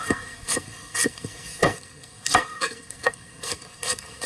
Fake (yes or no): yes